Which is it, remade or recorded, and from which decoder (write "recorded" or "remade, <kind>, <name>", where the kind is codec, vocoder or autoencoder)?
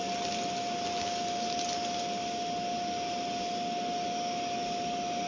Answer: recorded